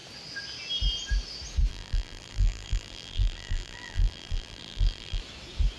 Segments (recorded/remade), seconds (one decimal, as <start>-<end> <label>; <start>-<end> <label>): 0.0-1.7 recorded; 1.7-5.2 remade; 5.2-5.8 recorded